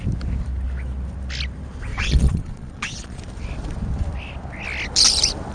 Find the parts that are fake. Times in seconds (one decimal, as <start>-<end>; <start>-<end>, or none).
1.9-3.2